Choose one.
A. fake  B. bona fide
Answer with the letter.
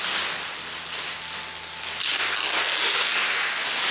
B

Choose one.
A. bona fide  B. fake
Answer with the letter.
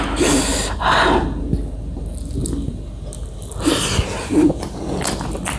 A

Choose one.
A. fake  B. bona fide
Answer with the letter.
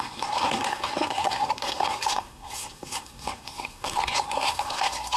A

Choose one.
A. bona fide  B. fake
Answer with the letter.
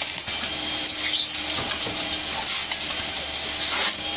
A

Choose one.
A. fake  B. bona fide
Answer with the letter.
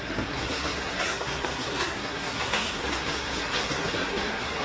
A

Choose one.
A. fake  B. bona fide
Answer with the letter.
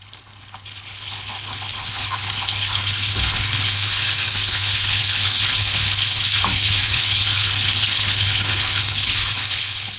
A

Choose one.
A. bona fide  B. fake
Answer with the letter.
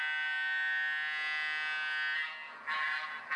A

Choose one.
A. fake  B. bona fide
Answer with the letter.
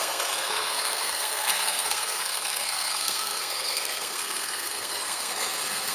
A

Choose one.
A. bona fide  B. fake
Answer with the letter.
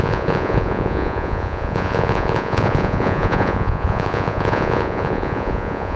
B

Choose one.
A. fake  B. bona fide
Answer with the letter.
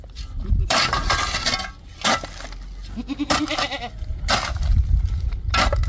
B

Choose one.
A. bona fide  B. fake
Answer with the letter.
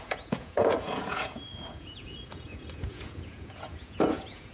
B